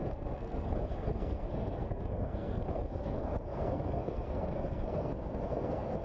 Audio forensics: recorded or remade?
remade